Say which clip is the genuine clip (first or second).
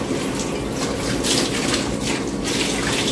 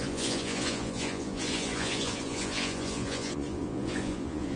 first